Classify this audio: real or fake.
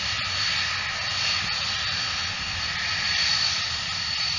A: real